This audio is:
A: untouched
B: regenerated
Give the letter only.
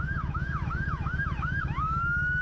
B